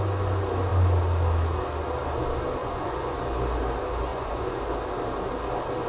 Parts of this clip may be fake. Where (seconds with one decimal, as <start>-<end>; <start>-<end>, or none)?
2.6-3.2; 4.1-4.6